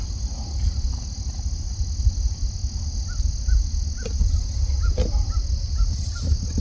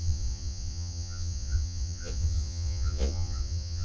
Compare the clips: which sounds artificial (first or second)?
second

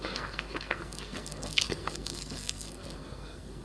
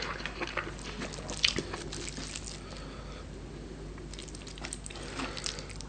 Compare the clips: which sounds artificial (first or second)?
first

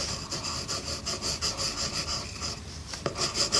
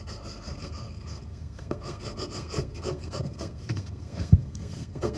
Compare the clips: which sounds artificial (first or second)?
second